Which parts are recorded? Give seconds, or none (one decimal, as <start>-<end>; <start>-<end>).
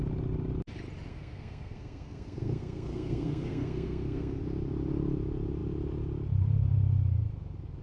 0.0-1.1; 4.4-7.8